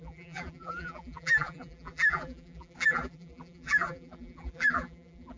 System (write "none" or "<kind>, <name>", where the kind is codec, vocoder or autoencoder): vocoder, BigVGAN v2